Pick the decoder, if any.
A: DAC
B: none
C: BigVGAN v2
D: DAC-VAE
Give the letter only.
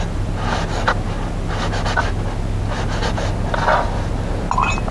B